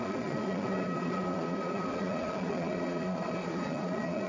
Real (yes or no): no